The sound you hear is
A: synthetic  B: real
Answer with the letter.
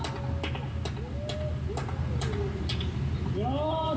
B